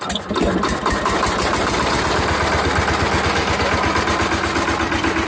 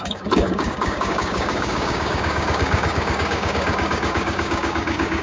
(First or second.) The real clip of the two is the first